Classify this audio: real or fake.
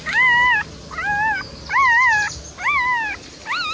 real